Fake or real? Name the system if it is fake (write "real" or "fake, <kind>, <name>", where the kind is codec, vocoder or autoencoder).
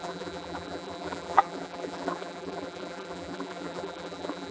fake, vocoder, BigVGAN v2